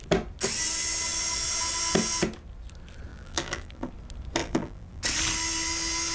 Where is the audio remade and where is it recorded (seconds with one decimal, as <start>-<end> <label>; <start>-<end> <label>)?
0.0-3.1 recorded; 3.1-3.9 remade; 3.9-4.4 recorded; 4.4-5.0 remade; 5.0-6.1 recorded